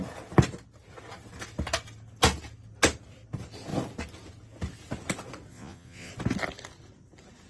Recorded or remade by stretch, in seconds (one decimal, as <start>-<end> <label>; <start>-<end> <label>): 0.0-5.5 recorded; 5.5-6.1 remade; 6.1-7.5 recorded